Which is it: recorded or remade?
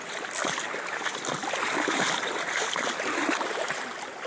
recorded